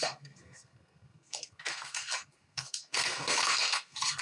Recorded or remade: remade